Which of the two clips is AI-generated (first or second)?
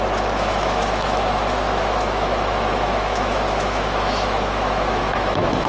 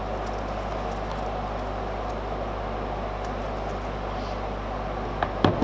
first